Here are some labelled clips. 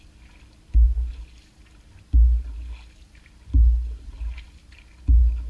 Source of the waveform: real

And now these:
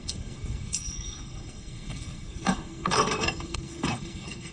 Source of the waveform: fake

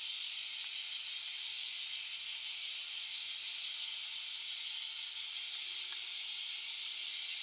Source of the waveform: real